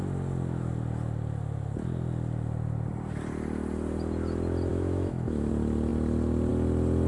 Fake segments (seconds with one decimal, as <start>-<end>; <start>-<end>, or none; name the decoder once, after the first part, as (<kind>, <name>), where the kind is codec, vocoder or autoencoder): 4.7-5.5 (autoencoder, DAC-VAE)